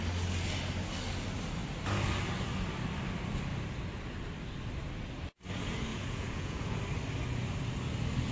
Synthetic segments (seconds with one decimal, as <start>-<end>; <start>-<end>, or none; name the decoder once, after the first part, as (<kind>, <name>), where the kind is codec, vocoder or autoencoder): 5.9-6.8 (vocoder, Vocos)